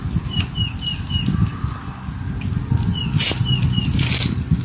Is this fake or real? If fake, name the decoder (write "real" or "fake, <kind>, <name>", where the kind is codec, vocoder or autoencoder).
real